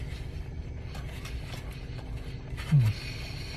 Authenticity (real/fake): real